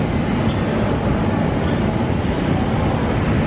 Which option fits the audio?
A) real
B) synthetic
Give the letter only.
A